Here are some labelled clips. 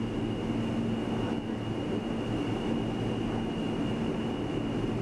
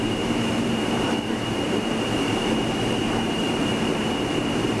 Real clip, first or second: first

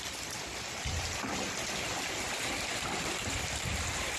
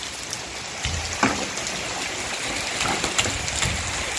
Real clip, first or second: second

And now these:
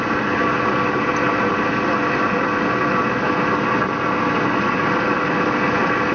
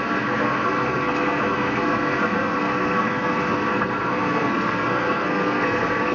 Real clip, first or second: first